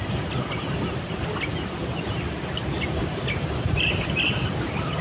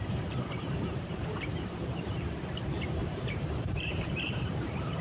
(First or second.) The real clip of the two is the first